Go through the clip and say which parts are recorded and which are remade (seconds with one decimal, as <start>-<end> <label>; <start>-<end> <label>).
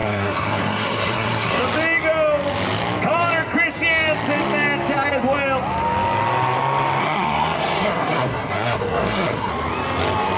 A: 0.0-1.6 remade; 1.6-7.0 recorded; 7.0-9.5 remade; 9.5-10.4 recorded